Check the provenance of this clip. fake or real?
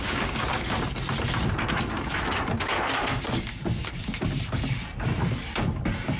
real